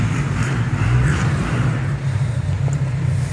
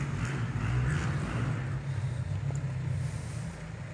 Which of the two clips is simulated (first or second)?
first